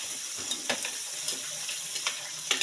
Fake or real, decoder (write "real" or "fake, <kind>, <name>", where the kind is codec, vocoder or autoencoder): real